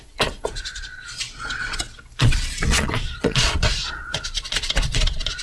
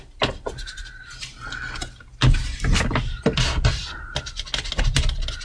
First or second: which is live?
second